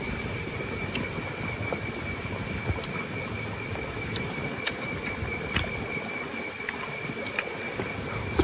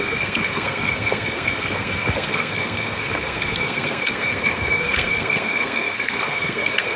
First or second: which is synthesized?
second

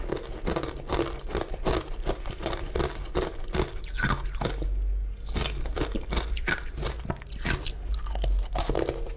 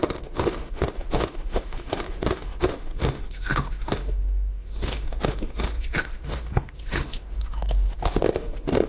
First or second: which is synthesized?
second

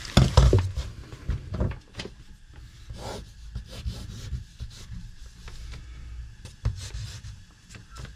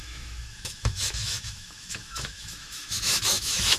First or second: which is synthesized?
second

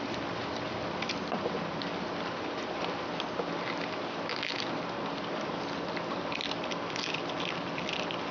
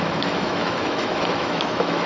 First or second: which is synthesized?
second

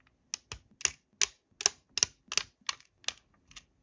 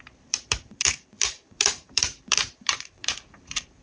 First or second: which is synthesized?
second